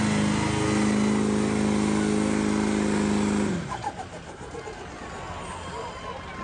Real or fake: real